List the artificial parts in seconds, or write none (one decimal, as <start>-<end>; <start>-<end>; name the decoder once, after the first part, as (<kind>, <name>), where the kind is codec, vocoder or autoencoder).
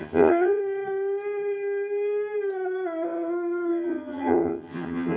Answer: 0.0-0.6 (vocoder, HiFi-GAN); 3.7-5.2